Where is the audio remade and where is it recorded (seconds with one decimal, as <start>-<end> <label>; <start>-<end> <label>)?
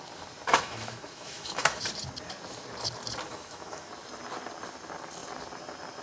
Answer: 0.0-0.5 recorded; 0.5-1.8 remade; 1.8-3.3 recorded; 3.3-3.9 remade; 3.9-6.0 recorded